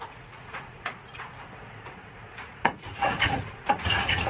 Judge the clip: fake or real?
fake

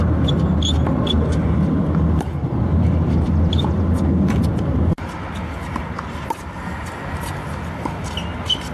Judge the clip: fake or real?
real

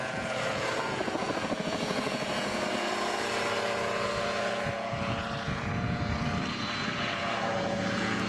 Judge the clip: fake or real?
fake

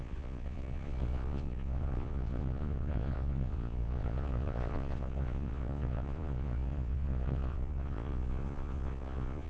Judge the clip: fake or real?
fake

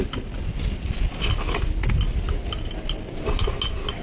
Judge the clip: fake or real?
real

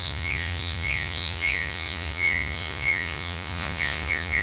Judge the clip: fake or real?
fake